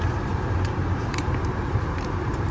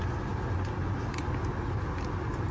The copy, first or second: first